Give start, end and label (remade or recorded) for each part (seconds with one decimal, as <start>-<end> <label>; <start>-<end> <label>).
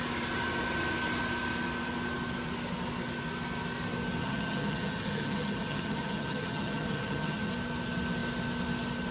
0.0-4.2 recorded; 4.2-7.5 remade; 7.5-9.1 recorded